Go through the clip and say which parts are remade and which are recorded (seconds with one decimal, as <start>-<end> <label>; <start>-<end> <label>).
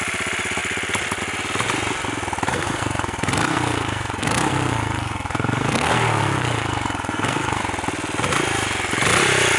0.0-2.5 recorded; 2.5-7.6 remade; 7.6-9.6 recorded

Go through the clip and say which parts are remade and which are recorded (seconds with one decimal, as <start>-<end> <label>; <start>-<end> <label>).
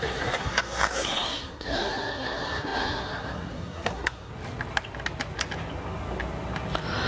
0.0-4.3 remade; 4.3-7.1 recorded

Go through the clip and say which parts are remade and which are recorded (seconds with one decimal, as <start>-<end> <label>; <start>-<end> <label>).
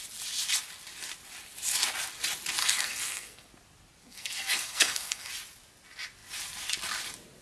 0.0-2.6 recorded; 2.6-3.5 remade; 3.5-4.0 recorded; 4.0-5.3 remade; 5.3-7.4 recorded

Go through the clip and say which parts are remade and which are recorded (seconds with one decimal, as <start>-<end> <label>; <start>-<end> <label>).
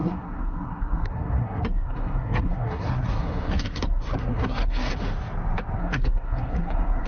0.0-4.9 remade; 4.9-5.8 recorded; 5.8-7.1 remade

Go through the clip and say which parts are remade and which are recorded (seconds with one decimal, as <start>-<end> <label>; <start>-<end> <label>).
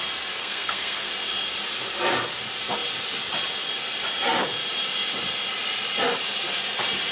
0.0-0.4 recorded; 0.4-1.1 remade; 1.1-7.1 recorded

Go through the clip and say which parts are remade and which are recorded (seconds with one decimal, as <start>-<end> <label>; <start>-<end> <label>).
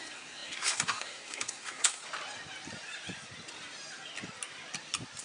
0.0-2.0 remade; 2.0-5.2 recorded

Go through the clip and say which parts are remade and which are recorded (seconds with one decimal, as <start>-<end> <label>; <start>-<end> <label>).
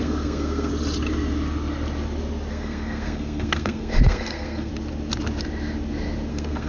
0.0-0.7 remade; 0.7-2.5 recorded; 2.5-4.7 remade; 4.7-6.3 recorded; 6.3-6.7 remade